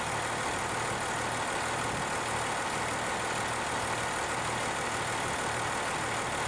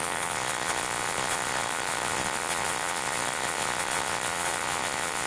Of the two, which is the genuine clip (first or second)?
first